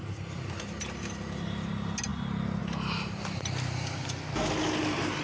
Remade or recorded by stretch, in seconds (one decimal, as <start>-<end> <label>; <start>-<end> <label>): 0.0-5.2 recorded